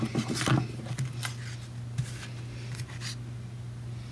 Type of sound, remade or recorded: recorded